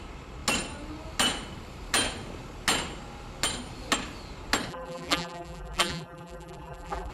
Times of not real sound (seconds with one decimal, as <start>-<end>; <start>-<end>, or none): 4.7-7.1